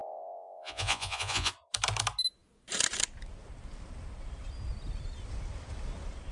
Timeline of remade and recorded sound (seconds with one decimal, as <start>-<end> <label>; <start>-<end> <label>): 0.0-1.5 remade; 1.5-6.3 recorded